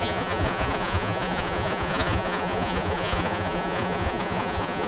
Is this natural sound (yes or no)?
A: no